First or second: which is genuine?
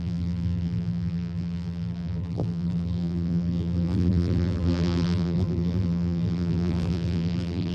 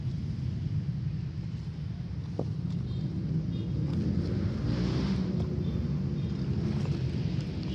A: second